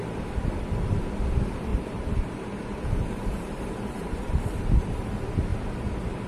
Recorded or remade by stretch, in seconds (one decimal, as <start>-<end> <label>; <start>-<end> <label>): 0.0-1.7 recorded; 1.7-5.1 remade; 5.1-6.3 recorded

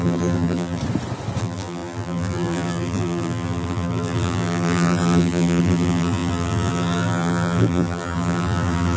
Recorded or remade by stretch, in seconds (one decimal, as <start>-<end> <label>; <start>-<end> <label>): 0.0-0.8 remade; 0.8-1.4 recorded; 1.4-9.0 remade

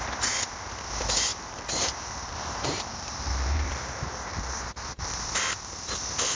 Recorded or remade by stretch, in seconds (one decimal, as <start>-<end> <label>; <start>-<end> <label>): 0.0-1.3 recorded; 1.3-5.1 remade; 5.1-6.3 recorded

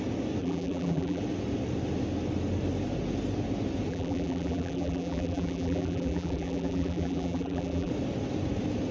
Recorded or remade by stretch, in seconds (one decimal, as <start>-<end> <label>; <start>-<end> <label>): 0.0-0.4 recorded; 0.4-1.2 remade; 1.2-3.9 recorded; 3.9-7.9 remade; 7.9-8.9 recorded

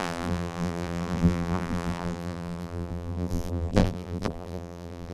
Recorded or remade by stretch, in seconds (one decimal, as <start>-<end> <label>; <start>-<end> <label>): 0.0-5.1 remade

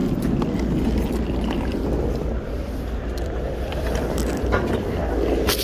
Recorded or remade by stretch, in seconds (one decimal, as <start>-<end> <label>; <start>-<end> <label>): 0.0-2.2 recorded; 2.2-5.1 remade; 5.1-5.6 recorded

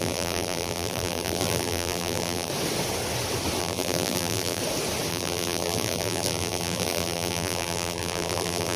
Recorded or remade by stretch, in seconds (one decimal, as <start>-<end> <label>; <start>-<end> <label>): 0.0-2.5 remade; 2.5-3.6 recorded; 3.6-4.6 remade; 4.6-5.1 recorded; 5.1-8.8 remade

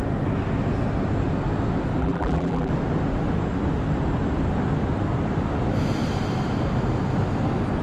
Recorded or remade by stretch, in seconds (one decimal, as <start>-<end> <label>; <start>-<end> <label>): 0.0-2.0 recorded; 2.0-2.7 remade; 2.7-7.8 recorded